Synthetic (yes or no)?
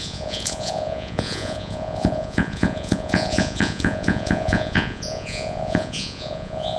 yes